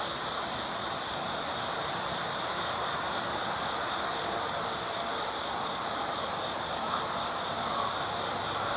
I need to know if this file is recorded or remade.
recorded